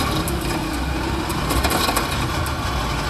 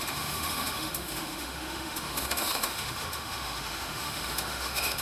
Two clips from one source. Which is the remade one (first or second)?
second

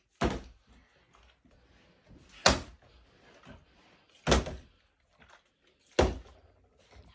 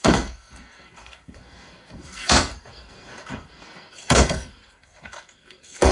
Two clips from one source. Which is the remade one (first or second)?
second